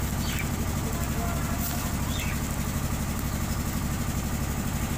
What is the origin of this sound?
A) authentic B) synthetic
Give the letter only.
A